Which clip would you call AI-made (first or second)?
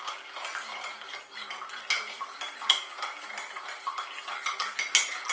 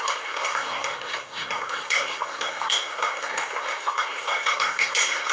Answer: second